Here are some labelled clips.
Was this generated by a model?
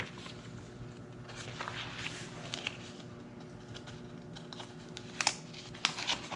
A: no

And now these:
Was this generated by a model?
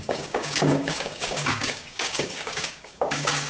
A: yes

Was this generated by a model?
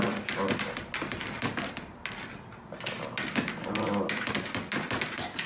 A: no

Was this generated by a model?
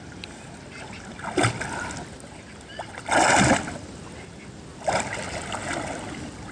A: no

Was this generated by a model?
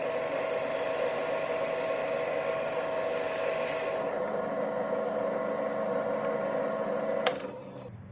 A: no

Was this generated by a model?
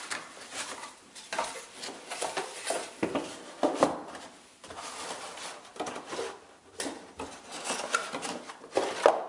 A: no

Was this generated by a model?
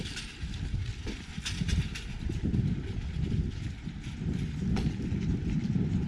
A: no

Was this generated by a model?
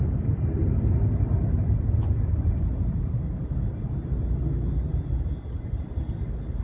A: no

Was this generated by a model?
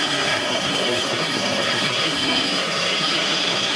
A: yes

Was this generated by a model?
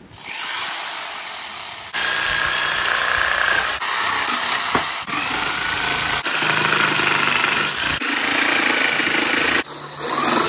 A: no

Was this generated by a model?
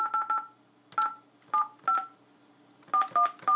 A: no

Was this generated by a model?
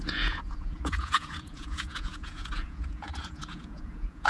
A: yes